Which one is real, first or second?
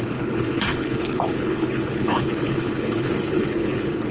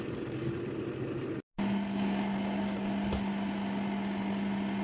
second